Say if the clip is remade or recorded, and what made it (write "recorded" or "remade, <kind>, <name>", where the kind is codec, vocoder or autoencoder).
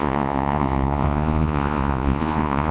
remade, vocoder, Vocos